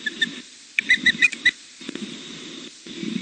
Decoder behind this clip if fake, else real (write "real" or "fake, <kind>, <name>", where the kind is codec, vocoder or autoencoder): fake, vocoder, BigVGAN v2